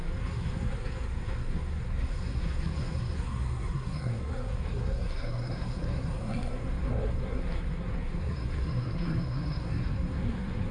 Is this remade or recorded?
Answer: remade